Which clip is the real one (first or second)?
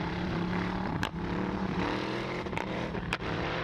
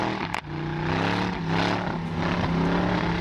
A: second